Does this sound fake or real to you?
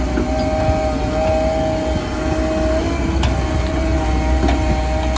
real